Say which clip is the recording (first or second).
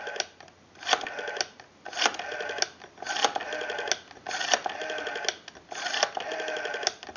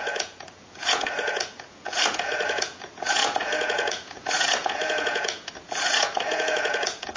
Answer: first